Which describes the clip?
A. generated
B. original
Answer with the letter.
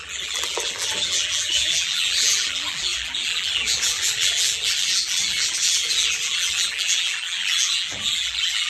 A